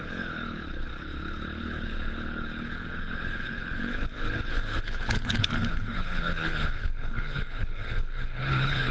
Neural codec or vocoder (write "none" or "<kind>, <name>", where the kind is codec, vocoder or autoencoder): codec, HILCodec